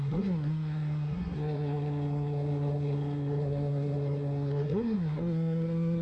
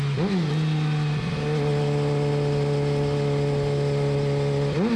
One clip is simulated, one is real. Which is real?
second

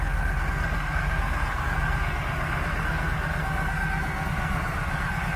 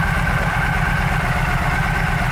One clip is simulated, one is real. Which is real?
second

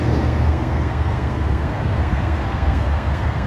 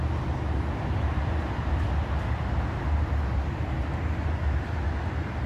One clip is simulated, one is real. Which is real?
second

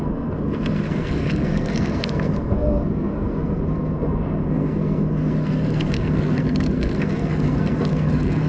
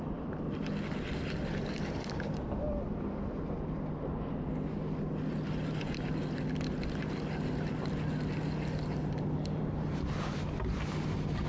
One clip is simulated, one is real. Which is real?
second